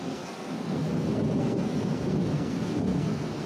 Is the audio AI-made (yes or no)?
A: yes